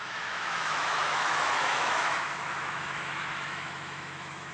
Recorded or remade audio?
remade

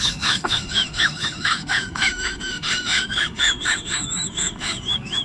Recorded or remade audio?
remade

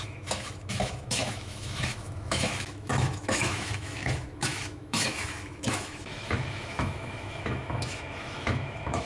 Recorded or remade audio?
remade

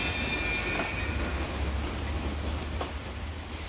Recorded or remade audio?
recorded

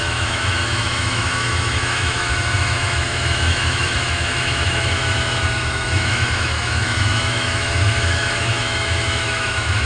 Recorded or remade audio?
remade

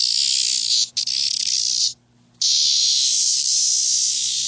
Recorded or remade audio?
recorded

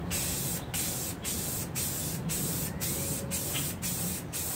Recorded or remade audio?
recorded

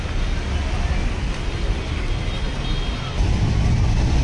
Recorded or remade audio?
recorded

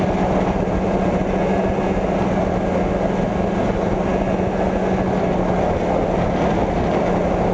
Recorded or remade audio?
recorded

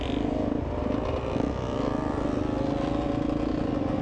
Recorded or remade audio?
recorded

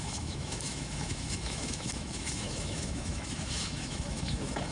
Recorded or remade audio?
remade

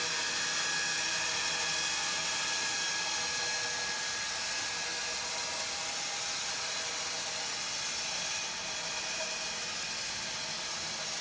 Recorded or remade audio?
recorded